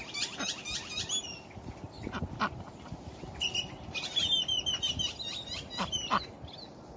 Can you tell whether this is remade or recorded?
recorded